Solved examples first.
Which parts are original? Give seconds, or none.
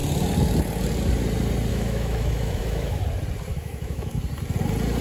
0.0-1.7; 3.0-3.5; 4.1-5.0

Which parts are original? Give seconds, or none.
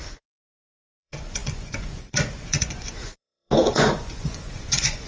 none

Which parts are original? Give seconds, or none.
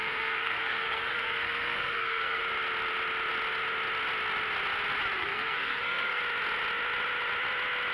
2.4-5.2; 6.2-7.9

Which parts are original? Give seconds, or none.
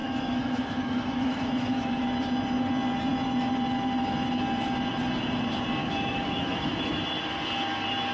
2.0-5.8; 6.9-8.1